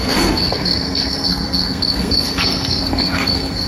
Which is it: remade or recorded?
remade